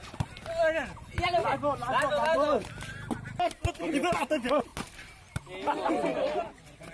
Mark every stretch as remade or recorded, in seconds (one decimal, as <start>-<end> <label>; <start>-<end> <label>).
0.0-1.4 recorded; 1.4-2.7 remade; 2.7-6.9 recorded